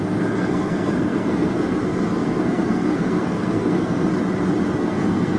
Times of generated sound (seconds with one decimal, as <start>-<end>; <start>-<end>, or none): 0.0-4.1; 4.8-5.4